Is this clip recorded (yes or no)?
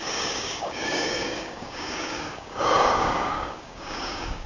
no